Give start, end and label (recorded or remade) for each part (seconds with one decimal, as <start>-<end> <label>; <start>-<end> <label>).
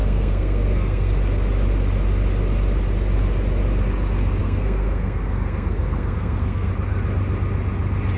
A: 0.0-1.1 remade; 1.1-4.4 recorded; 4.4-6.7 remade; 6.7-8.2 recorded